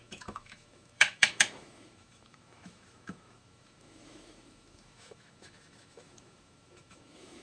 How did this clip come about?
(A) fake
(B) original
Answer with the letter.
A